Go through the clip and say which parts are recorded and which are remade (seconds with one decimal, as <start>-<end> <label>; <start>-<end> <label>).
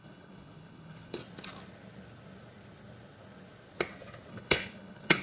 0.0-1.2 remade; 1.2-4.3 recorded; 4.3-5.2 remade